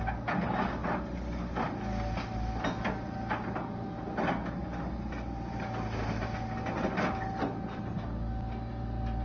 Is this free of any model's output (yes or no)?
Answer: yes